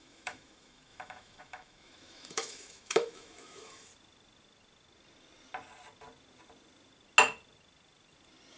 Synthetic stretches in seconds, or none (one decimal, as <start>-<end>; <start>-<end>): 0.0-3.9

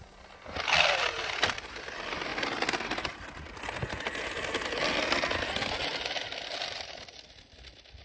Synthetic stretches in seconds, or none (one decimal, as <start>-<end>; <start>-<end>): none

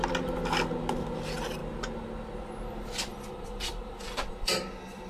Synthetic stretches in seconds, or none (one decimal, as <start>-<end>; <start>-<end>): 3.1-5.1

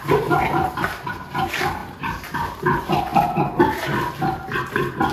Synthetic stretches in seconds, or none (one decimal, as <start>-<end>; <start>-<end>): none

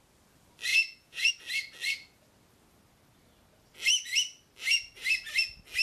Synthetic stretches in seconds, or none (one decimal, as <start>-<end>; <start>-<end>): 0.7-1.3

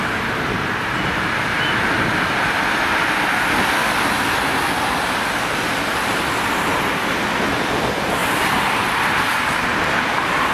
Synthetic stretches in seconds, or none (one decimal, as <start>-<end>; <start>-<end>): none

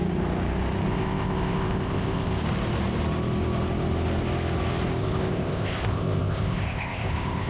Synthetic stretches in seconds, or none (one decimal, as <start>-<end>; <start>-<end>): 0.9-2.4; 5.0-7.5

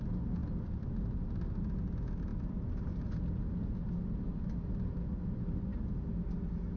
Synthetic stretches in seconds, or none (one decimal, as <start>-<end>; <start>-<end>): 0.4-1.2; 2.3-3.2